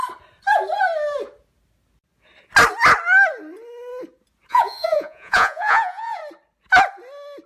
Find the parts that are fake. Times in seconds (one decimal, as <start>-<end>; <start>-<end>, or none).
4.5-6.2